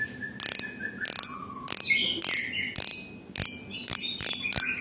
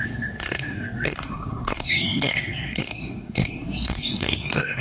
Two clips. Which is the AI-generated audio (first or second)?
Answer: second